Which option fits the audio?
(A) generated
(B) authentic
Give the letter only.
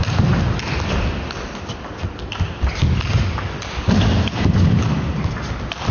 B